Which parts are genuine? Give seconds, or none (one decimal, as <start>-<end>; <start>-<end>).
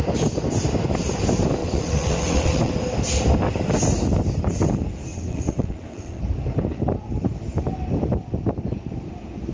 0.0-1.6; 2.7-5.1; 6.2-9.5